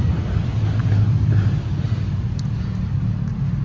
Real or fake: real